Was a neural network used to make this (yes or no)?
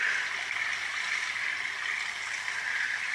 no